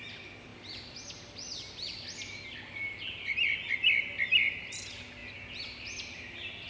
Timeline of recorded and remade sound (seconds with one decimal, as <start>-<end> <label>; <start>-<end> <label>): 0.0-6.7 recorded